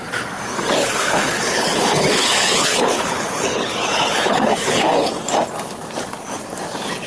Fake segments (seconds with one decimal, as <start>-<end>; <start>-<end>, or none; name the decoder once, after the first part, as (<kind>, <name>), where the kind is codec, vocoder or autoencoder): 0.8-5.1 (codec, HILCodec)